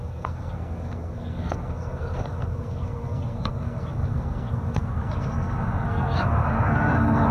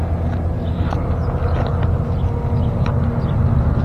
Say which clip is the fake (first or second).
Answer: first